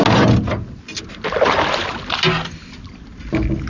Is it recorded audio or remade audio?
recorded